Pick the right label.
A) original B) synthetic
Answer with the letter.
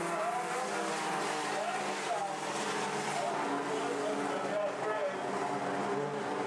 A